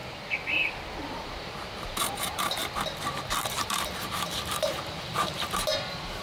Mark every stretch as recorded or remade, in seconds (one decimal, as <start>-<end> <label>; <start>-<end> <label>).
0.0-0.7 recorded; 0.7-2.6 remade; 2.6-3.5 recorded; 3.5-6.2 remade